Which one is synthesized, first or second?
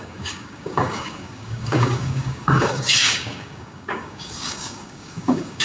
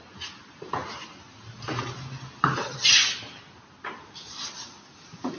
first